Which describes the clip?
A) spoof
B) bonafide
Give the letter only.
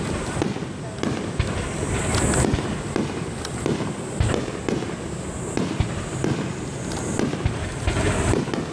B